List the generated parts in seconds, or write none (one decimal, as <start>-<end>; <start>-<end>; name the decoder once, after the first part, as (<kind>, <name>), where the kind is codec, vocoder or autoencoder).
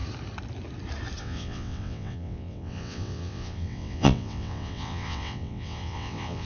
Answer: 1.2-6.5 (vocoder, WaveNeXt)